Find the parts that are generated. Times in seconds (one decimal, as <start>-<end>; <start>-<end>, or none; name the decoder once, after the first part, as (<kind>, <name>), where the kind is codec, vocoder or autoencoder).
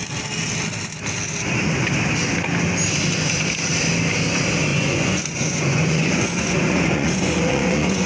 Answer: 4.7-8.1 (vocoder, Vocos)